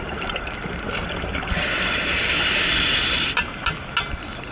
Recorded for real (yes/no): yes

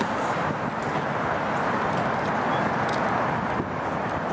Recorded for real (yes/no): yes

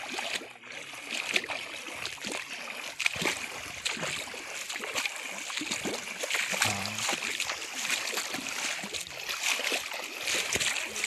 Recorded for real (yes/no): yes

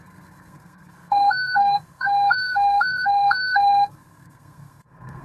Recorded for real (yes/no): no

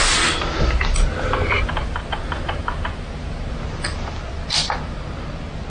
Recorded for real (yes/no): yes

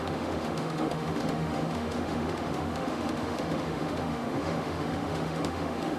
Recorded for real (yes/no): no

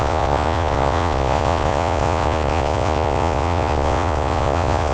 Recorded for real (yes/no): no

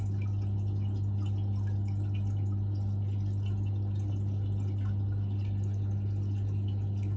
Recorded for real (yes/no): yes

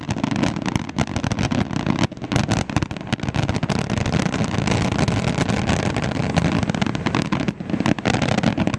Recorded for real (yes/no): yes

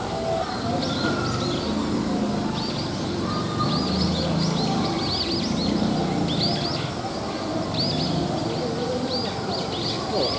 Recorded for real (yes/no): yes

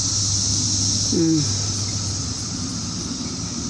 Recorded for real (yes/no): yes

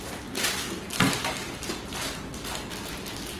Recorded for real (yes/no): yes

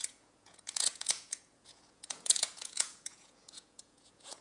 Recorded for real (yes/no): no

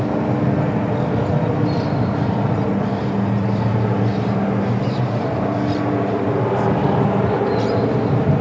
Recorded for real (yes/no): yes